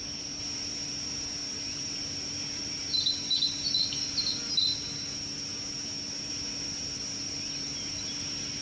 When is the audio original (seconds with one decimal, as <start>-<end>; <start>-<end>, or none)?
0.0-8.6